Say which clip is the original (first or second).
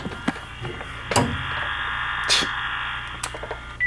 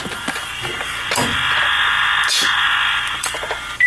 first